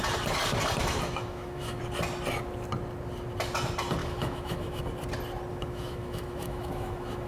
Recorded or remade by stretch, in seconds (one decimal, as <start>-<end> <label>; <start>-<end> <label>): 0.0-0.8 recorded; 0.8-1.8 remade; 1.8-4.0 recorded; 4.0-4.8 remade; 4.8-5.5 recorded; 5.5-7.3 remade